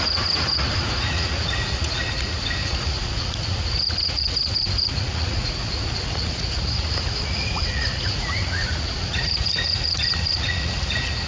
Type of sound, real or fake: fake